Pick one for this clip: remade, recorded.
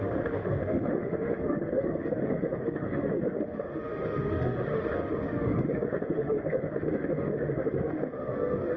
remade